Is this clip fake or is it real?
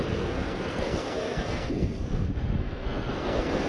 fake